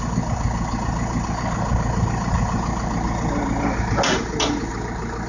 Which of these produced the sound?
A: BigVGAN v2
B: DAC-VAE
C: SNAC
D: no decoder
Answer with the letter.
D